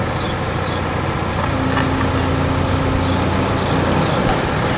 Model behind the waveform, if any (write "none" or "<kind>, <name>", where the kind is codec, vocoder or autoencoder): none